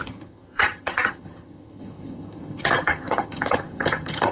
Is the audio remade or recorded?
remade